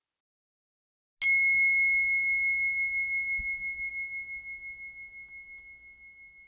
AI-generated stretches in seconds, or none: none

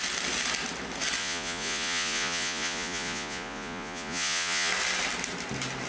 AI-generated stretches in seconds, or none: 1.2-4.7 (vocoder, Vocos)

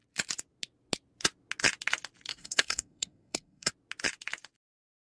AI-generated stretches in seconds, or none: 2.3-3.7 (codec, SNAC)

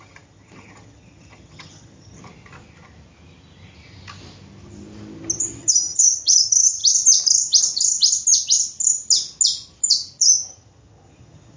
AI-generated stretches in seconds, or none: 0.0-2.2 (vocoder, HiFi-GAN); 5.6-6.8; 10.5-11.6

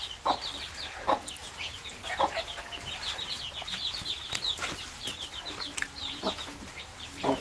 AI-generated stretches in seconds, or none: 1.4-2.4 (vocoder, Vocos); 6.0-6.7